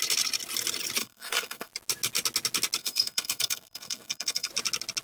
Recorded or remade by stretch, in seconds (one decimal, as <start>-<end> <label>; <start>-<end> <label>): 0.0-1.0 recorded; 1.0-1.7 remade; 1.7-2.8 recorded; 2.8-4.5 remade; 4.5-5.0 recorded